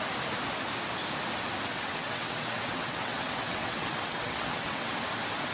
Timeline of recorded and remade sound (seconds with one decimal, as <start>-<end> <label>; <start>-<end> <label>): 0.0-1.7 recorded; 1.7-5.0 remade; 5.0-5.5 recorded

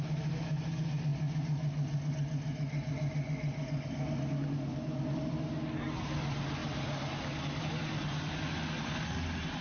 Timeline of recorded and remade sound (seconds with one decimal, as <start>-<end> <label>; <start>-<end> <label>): 0.0-9.6 recorded

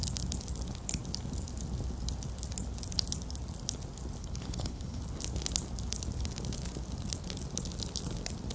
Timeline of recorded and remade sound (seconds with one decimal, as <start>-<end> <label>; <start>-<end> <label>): 0.0-4.2 recorded; 4.2-5.0 remade; 5.0-8.5 recorded

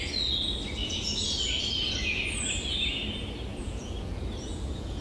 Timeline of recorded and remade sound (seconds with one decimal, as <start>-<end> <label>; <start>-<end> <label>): 0.0-3.5 recorded; 3.5-5.0 remade